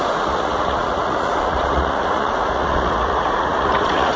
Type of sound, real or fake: fake